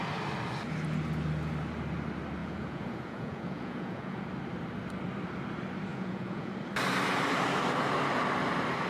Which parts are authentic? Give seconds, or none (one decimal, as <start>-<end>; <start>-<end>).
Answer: 0.0-2.4; 4.2-5.9; 6.5-8.9